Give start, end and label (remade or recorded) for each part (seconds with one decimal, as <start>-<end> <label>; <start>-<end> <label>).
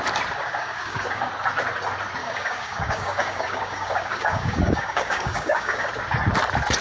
0.0-0.4 recorded; 0.4-1.3 remade; 1.3-2.2 recorded; 2.2-5.9 remade; 5.9-6.8 recorded